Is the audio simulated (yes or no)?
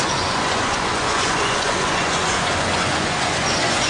yes